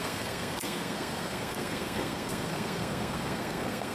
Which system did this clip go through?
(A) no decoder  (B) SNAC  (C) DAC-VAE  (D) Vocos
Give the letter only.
B